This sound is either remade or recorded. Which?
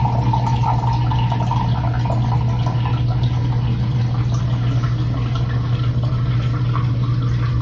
recorded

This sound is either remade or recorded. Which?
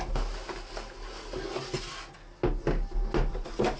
recorded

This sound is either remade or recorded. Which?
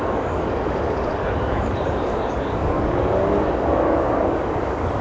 remade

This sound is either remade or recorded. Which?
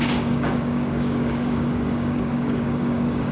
remade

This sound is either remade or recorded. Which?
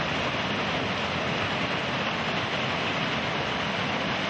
recorded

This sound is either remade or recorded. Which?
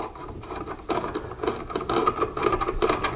recorded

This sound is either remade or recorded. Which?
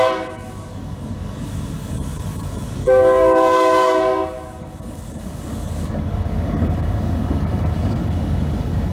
remade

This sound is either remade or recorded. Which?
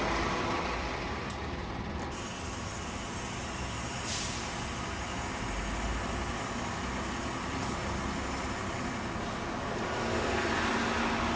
recorded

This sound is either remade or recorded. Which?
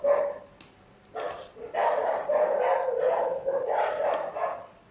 recorded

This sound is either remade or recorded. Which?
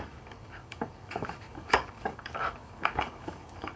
remade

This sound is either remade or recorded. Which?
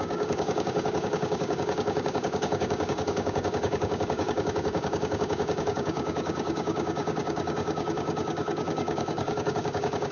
remade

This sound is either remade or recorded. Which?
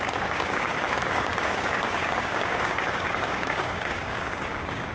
remade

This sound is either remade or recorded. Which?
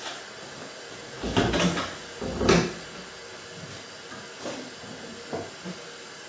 recorded